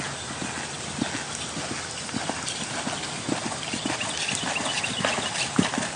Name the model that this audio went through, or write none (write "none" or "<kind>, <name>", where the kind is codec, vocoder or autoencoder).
none